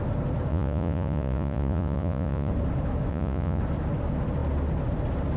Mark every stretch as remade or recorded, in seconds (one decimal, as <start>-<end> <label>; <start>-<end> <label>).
0.0-0.5 recorded; 0.5-2.5 remade; 2.5-3.1 recorded; 3.1-3.6 remade; 3.6-5.4 recorded